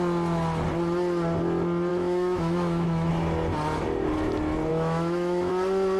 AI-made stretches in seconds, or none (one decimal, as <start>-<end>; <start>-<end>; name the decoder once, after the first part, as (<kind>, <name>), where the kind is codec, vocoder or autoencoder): 1.9-3.1 (autoencoder, DAC-VAE); 4.7-5.5